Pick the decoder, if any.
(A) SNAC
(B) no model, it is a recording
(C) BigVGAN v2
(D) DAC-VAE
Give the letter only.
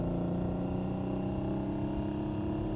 B